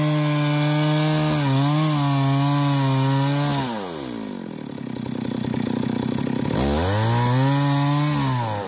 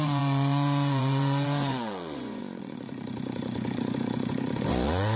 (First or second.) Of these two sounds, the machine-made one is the second